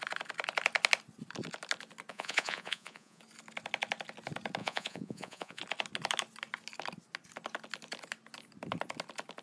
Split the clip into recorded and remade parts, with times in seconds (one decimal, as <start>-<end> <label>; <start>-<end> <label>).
0.0-2.1 recorded; 2.1-3.2 remade; 3.2-4.6 recorded; 4.6-5.6 remade; 5.6-9.4 recorded